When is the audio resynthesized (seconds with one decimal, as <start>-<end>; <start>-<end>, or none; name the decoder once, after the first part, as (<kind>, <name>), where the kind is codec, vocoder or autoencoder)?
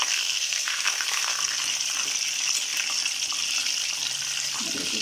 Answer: 0.0-1.5 (codec, SNAC)